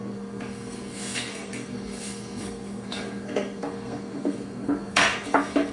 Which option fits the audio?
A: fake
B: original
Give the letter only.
A